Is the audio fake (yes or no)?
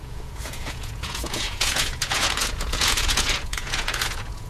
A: yes